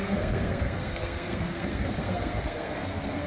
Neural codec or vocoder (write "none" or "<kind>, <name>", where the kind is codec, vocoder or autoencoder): codec, SNAC